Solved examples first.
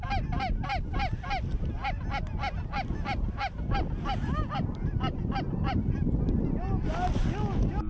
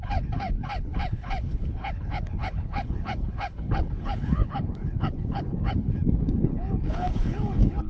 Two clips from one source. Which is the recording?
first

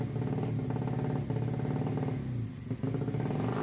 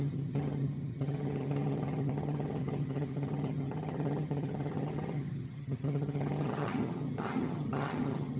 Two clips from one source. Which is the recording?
first